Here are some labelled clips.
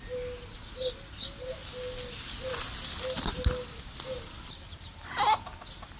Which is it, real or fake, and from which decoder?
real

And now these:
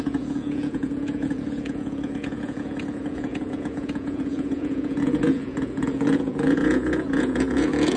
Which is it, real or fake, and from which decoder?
fake, vocoder, Vocos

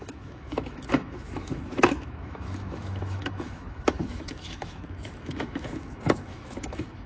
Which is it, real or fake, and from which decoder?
fake, autoencoder, DAC-VAE